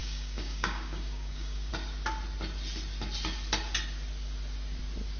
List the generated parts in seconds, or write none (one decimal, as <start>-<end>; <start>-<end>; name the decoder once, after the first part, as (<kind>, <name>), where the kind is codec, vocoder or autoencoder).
0.0-1.7 (codec, DAC)